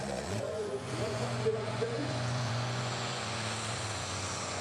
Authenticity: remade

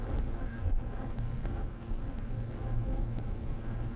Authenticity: remade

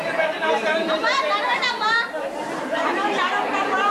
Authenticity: remade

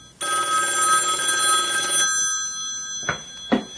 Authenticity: recorded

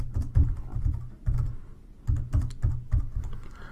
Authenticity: recorded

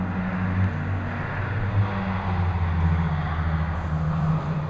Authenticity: recorded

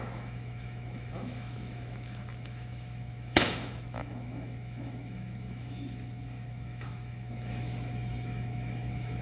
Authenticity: remade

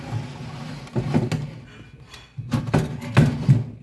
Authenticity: recorded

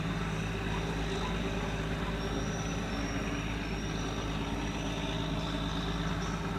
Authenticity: recorded